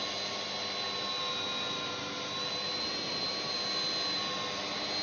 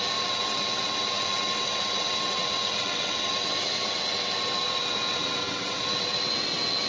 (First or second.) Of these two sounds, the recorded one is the first